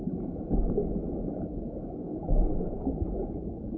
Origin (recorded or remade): remade